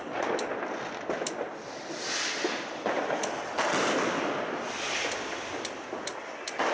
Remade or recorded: recorded